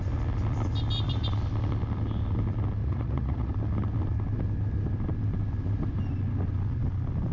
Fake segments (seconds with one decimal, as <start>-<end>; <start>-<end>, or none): 2.8-3.5